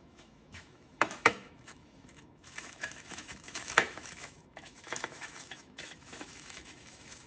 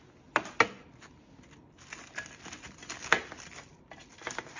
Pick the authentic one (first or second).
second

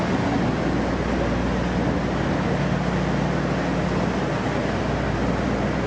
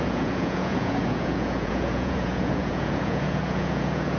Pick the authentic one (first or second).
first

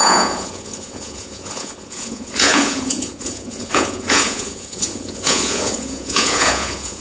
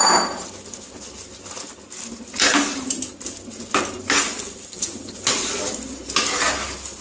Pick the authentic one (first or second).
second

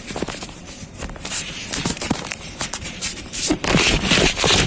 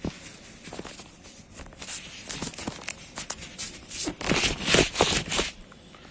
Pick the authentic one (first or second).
second